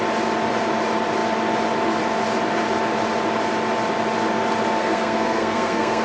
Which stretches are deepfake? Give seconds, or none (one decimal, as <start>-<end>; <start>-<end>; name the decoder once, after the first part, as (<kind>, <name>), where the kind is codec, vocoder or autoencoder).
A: 4.8-6.0 (codec, SNAC)